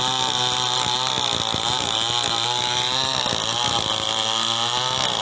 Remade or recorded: recorded